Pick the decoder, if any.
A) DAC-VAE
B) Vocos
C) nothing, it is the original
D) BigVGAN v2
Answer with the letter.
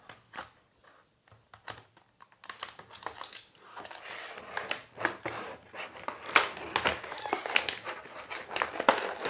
C